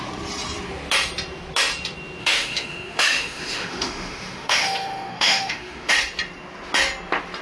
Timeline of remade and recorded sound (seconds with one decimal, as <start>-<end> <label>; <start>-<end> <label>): 0.0-2.2 recorded; 2.2-5.9 remade; 5.9-7.4 recorded